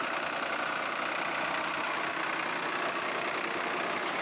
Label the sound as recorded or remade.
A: recorded